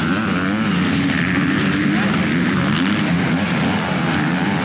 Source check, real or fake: real